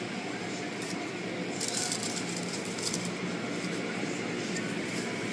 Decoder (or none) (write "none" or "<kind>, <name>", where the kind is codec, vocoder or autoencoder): none